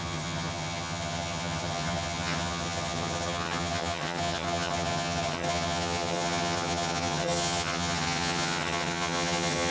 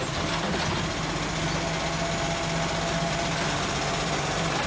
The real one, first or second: second